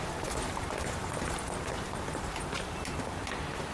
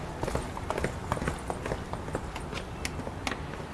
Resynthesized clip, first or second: first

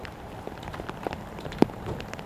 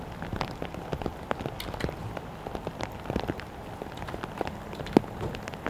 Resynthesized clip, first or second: first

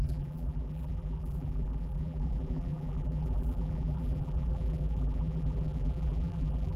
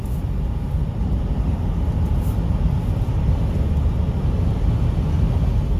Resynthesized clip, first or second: first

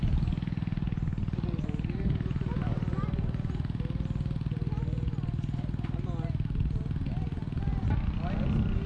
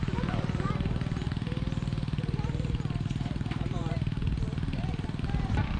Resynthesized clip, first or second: second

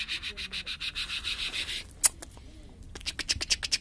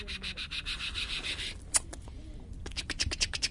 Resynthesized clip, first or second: second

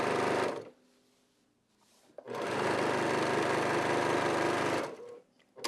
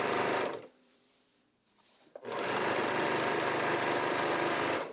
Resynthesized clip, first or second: second